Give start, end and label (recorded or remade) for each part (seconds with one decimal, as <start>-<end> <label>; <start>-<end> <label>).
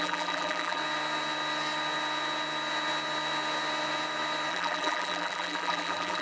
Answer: 0.0-0.8 remade; 0.8-4.5 recorded; 4.5-6.2 remade